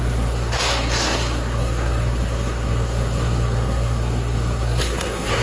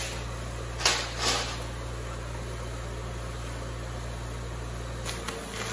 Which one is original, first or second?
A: second